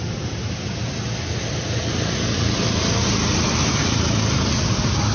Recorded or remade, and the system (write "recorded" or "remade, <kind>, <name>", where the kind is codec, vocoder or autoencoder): recorded